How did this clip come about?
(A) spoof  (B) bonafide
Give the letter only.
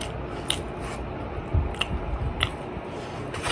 B